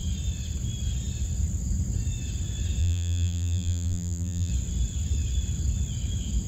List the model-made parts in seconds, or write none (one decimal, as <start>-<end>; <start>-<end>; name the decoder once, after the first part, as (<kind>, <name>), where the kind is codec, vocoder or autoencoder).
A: 2.8-4.5 (vocoder, BigVGAN v2)